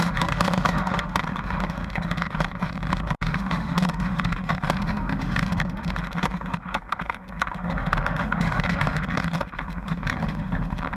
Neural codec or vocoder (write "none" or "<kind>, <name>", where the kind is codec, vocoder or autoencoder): autoencoder, DAC-VAE